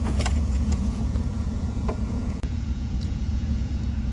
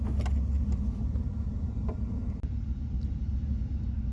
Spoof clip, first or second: first